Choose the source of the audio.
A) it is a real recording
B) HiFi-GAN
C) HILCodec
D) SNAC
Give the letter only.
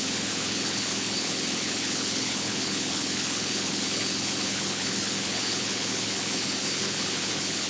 C